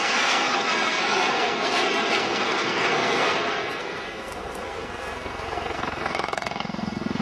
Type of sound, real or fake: fake